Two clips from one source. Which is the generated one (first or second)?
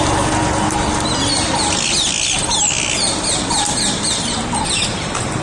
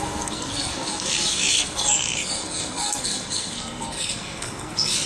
second